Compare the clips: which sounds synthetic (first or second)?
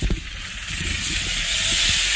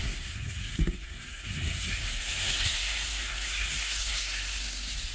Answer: second